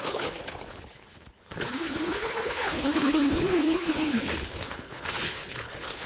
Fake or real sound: fake